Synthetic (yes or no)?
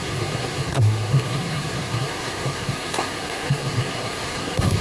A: yes